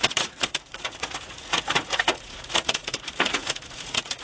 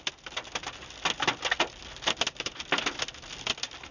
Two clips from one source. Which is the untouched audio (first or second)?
second